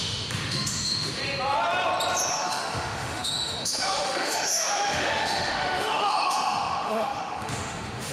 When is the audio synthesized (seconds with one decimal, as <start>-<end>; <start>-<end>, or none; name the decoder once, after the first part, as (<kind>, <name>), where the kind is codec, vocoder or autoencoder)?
0.0-1.2 (autoencoder, DAC-VAE); 2.3-8.1